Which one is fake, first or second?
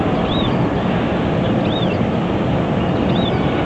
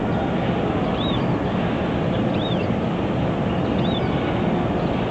first